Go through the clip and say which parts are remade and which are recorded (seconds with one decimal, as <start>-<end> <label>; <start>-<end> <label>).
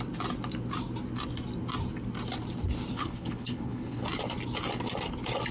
0.0-2.9 recorded; 2.9-4.0 remade; 4.0-5.5 recorded